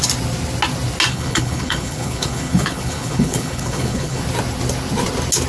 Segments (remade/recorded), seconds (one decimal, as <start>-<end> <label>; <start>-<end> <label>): 0.0-1.1 recorded; 1.1-4.2 remade; 4.2-5.5 recorded